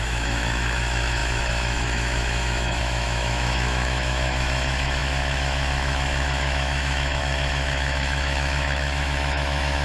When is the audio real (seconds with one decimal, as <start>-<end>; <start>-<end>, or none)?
none